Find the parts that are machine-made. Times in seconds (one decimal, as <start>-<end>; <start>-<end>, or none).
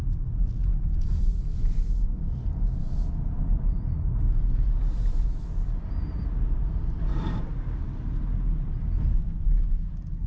0.7-1.2